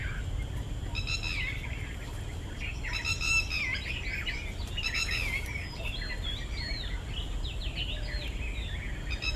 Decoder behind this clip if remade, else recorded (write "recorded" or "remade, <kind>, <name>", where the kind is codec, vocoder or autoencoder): recorded